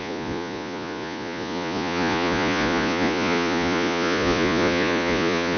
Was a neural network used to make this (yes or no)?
yes